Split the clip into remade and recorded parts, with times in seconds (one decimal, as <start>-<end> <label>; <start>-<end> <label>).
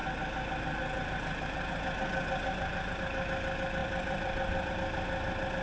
0.0-3.8 recorded; 3.8-4.7 remade; 4.7-5.6 recorded